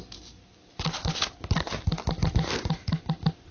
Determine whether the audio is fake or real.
real